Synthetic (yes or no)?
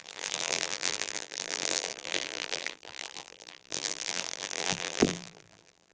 yes